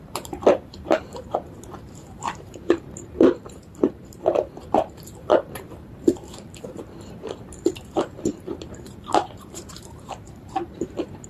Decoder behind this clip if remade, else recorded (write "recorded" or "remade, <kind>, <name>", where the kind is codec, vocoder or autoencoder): remade, vocoder, BigVGAN v2